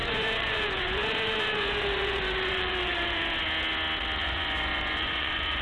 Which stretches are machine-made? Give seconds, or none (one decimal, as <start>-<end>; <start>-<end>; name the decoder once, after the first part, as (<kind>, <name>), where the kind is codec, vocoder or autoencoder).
0.0-3.4 (vocoder, Vocos); 4.2-5.6